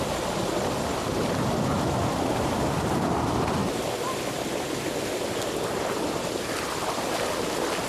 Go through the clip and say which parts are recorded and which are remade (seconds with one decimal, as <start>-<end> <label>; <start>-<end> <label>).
0.0-7.9 recorded

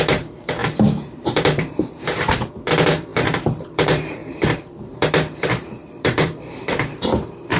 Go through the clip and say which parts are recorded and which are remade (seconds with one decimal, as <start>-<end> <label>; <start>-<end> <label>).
0.0-7.6 remade

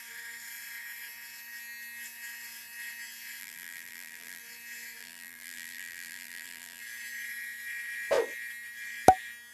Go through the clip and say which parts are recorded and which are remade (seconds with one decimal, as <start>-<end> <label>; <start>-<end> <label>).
0.0-3.4 recorded; 3.4-4.4 remade; 4.4-5.0 recorded; 5.0-6.8 remade; 6.8-9.5 recorded

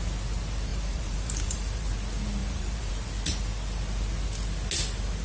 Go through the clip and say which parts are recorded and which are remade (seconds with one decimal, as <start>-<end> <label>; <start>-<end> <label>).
0.0-0.7 recorded; 0.7-1.9 remade; 1.9-2.4 recorded; 2.4-2.9 remade; 2.9-5.2 recorded